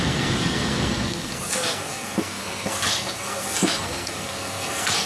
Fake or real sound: fake